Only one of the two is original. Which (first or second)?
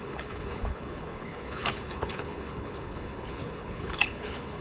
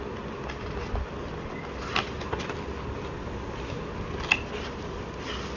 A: second